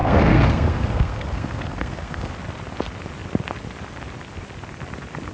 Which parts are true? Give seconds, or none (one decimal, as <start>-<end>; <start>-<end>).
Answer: 2.3-5.3